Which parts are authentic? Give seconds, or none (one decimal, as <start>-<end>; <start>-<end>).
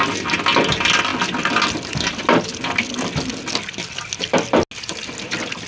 0.0-5.7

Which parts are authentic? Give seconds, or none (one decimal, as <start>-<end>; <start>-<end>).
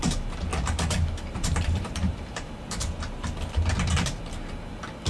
0.0-0.5; 3.6-5.1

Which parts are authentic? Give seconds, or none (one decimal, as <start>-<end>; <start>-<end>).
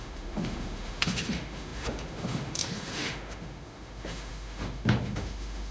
none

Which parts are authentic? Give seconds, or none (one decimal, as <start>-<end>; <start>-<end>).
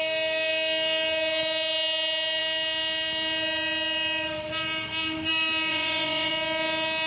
0.0-5.7; 6.3-7.1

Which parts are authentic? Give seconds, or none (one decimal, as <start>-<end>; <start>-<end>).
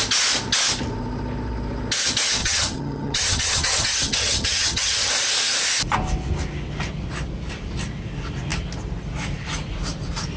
0.0-2.4; 5.1-10.4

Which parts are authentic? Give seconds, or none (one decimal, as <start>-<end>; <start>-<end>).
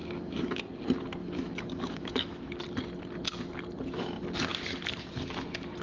0.6-1.2; 2.5-5.8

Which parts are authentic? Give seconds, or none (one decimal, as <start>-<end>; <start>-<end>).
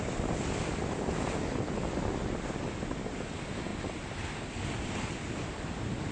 0.0-6.1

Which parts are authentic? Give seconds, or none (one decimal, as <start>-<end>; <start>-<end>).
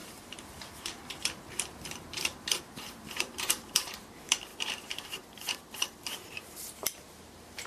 none